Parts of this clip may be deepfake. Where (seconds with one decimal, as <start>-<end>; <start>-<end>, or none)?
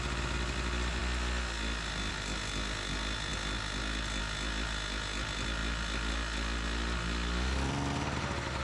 none